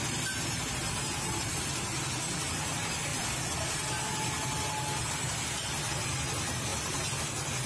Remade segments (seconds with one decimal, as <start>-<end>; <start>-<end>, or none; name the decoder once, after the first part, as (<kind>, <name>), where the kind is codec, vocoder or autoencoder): none